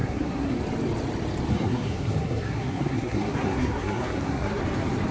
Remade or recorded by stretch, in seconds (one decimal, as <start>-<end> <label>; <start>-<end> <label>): 0.0-0.6 remade; 0.6-1.5 recorded; 1.5-4.6 remade; 4.6-5.1 recorded